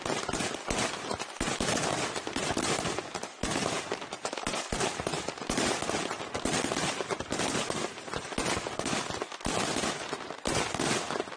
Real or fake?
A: real